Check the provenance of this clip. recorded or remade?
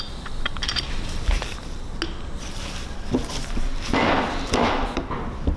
recorded